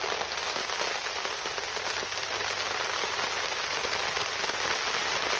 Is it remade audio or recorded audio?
recorded